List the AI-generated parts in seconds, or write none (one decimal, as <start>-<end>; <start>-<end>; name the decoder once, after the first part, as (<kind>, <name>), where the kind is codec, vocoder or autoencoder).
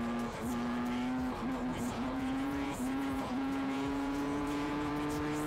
1.7-4.9 (vocoder, Vocos)